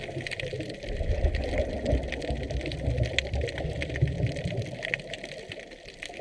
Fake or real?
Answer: real